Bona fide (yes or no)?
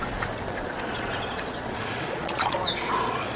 no